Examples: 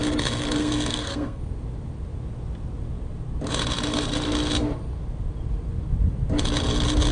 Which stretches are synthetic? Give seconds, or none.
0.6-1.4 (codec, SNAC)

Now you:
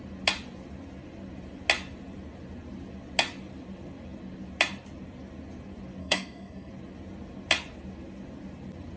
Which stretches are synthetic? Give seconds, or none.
6.0-6.7 (codec, SNAC)

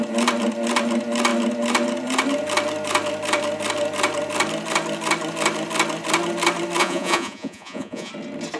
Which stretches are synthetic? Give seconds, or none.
6.8-8.1 (vocoder, Vocos)

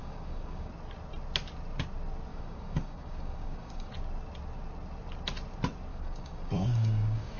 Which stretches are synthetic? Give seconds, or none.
0.0-0.7 (codec, DAC); 2.3-3.9; 5.9-7.4